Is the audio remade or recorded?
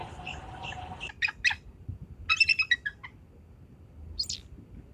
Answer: recorded